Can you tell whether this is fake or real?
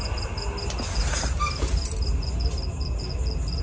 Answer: real